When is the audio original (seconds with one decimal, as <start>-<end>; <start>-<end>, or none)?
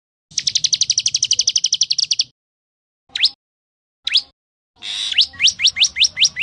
0.0-6.4